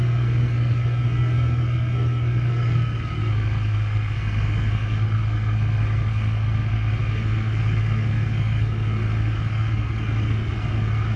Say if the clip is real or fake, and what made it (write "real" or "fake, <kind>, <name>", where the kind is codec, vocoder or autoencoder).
fake, codec, SNAC